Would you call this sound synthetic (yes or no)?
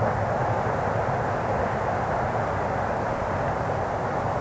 no